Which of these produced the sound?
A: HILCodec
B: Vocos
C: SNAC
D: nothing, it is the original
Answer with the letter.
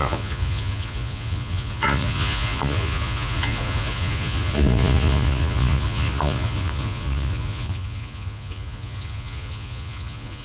B